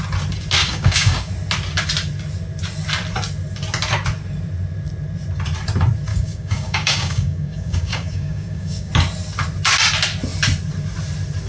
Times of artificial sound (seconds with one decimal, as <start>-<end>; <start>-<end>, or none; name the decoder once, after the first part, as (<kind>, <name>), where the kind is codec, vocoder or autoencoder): 0.6-1.3 (codec, DAC); 6.1-8.9